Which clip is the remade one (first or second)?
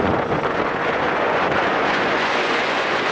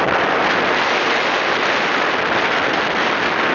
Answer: first